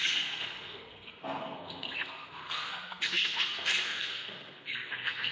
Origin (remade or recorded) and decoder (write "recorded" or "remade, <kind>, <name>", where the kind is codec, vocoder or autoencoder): remade, codec, SNAC